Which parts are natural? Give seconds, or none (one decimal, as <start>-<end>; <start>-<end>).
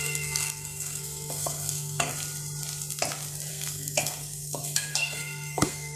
2.1-3.5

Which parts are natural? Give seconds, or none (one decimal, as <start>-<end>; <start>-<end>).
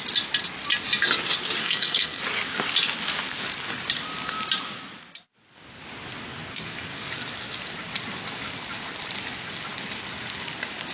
0.0-1.6; 2.2-10.9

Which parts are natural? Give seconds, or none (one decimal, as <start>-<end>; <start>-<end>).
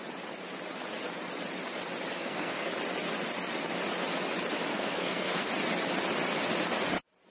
0.0-2.1; 2.7-4.7; 5.5-7.3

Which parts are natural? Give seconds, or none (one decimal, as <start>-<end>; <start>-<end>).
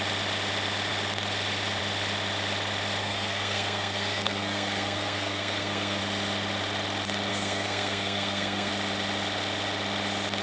0.0-3.0; 6.0-7.3; 8.7-10.4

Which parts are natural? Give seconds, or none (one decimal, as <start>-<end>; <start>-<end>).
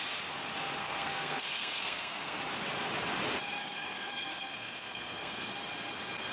0.0-0.8; 2.4-3.6; 5.5-6.3